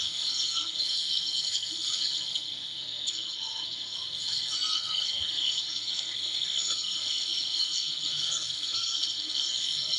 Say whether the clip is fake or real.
fake